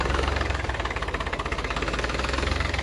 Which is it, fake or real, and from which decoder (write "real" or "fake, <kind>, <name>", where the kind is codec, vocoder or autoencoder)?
fake, codec, DAC